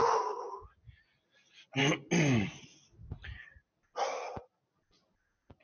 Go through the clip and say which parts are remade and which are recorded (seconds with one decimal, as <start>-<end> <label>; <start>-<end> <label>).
0.0-5.6 recorded